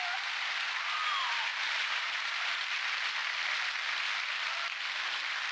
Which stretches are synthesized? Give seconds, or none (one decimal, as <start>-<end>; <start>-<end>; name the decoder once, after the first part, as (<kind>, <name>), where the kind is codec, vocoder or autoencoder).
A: 1.5-2.6 (vocoder, BigVGAN v2)

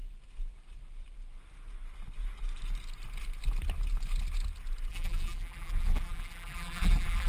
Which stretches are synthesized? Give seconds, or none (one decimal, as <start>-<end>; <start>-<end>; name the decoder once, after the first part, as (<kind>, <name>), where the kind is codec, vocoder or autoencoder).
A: 4.9-7.3 (vocoder, BigVGAN v2)

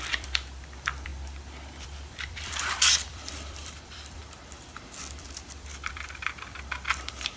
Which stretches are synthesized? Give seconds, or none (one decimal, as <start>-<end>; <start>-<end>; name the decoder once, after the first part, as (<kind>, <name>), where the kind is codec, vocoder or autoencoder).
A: 0.0-1.1 (vocoder, BigVGAN v2); 1.8-4.2; 5.2-7.4

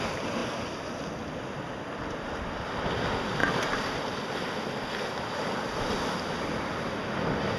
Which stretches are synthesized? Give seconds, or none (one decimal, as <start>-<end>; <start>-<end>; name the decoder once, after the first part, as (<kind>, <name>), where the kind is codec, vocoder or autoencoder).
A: none

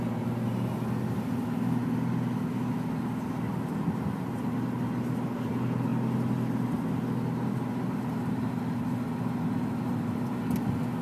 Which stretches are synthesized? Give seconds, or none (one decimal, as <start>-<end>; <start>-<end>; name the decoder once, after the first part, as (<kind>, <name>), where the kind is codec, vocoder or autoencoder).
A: none

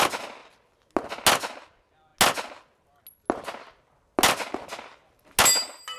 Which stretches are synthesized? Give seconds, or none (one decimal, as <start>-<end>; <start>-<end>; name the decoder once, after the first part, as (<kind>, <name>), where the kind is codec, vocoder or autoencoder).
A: none

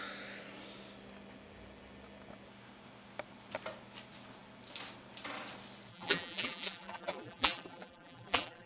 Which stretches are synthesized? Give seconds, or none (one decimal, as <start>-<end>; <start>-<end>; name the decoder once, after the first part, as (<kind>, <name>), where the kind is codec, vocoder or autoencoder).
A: 5.9-8.7 (vocoder, BigVGAN v2)

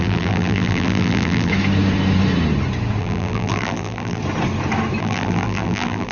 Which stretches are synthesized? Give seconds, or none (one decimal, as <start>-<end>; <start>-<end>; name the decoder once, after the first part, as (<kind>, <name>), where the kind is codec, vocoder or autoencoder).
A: 0.0-1.5 (vocoder, BigVGAN v2); 3.0-4.2; 5.0-6.1